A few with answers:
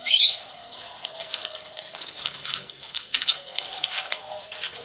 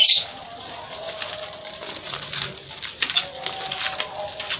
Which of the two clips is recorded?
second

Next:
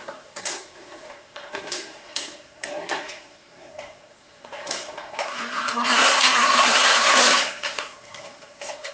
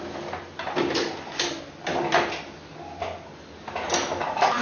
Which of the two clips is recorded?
second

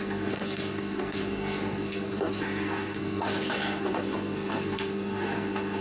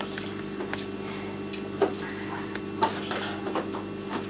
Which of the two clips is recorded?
second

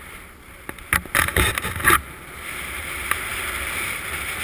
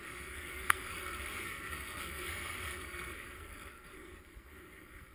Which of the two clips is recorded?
first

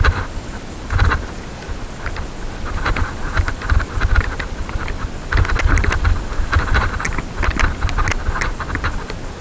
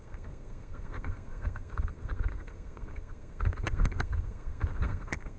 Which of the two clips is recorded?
first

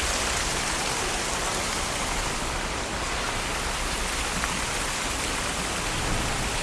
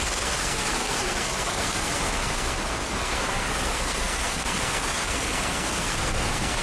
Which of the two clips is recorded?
first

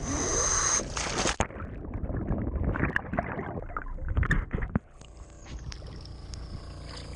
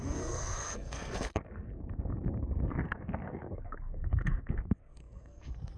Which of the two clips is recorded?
first